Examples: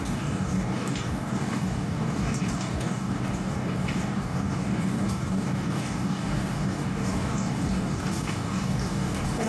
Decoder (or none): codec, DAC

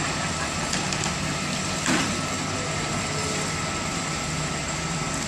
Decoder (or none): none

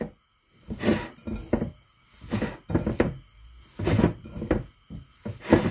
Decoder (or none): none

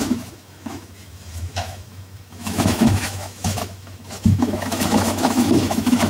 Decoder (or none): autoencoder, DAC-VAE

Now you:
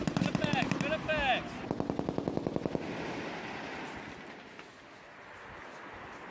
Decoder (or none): none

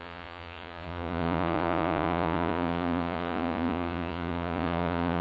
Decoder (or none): vocoder, Vocos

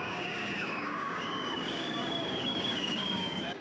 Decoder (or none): codec, DAC